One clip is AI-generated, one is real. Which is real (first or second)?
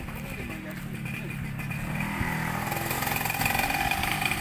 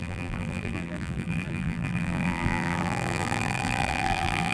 first